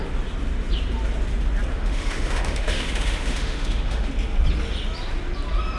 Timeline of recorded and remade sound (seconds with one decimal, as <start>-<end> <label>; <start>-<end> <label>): 0.0-1.7 recorded; 1.7-4.1 remade; 4.1-5.8 recorded